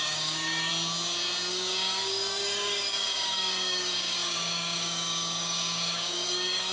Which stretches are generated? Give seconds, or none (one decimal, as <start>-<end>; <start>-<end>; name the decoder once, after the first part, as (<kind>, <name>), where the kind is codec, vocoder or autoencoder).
0.0-0.7 (codec, DAC); 1.5-6.7